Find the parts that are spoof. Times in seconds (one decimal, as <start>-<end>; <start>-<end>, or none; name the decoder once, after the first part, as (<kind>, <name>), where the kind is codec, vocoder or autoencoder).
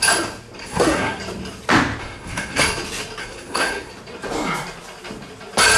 0.6-1.2 (codec, SNAC); 2.0-2.6; 3.2-3.9